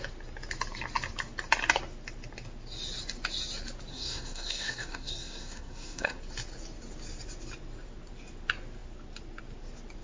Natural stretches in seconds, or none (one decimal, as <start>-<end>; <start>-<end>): 0.0-3.9; 6.2-10.0